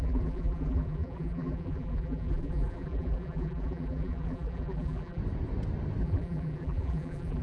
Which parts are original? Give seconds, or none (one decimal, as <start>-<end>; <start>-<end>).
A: 5.2-6.0